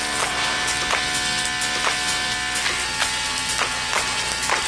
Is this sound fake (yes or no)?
no